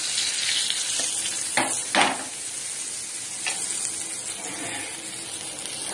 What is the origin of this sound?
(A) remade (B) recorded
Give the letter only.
B